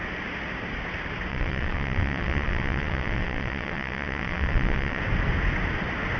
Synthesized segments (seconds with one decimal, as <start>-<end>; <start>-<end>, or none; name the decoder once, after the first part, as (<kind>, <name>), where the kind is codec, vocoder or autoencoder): 1.3-5.0 (vocoder, WaveNeXt)

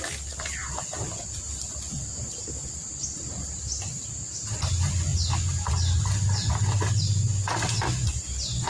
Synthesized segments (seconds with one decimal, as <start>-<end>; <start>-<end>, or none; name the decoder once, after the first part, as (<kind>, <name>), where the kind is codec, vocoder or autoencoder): none